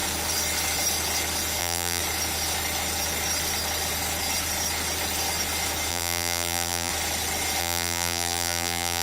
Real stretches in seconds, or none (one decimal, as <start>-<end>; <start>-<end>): 0.0-1.6; 2.0-5.9; 6.9-7.6